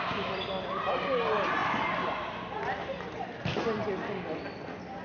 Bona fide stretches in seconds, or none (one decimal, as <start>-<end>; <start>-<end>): 0.0-5.0